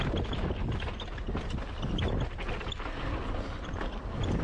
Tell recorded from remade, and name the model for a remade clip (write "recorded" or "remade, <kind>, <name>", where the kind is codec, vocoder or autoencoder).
recorded